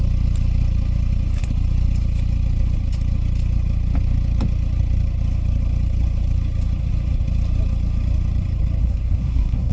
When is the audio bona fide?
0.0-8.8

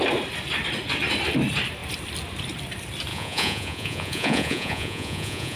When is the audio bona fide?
0.0-3.1

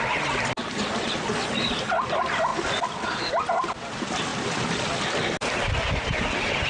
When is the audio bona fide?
0.0-2.5; 3.3-4.3; 5.2-6.7

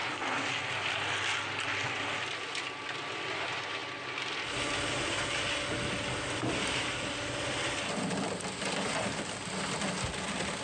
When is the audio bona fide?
0.0-10.6

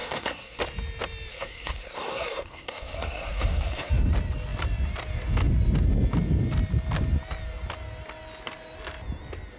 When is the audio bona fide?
0.6-1.3; 3.9-9.6